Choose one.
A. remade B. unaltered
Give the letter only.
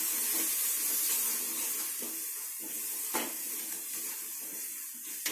B